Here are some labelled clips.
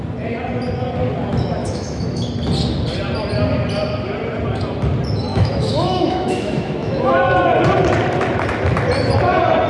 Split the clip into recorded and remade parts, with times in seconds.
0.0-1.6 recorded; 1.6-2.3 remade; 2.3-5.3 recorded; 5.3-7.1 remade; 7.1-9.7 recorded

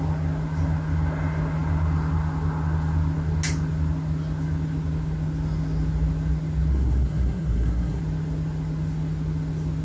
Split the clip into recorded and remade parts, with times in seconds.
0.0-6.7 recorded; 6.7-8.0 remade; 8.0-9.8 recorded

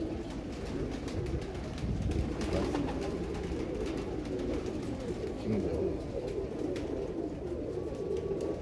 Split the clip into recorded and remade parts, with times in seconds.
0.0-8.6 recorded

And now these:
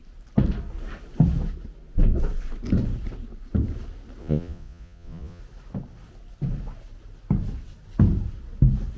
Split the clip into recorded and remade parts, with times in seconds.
0.0-4.2 recorded; 4.2-5.4 remade; 5.4-9.0 recorded